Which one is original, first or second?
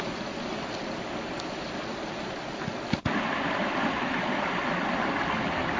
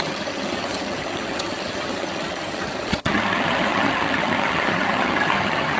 first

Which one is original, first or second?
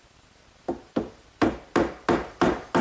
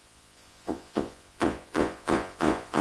first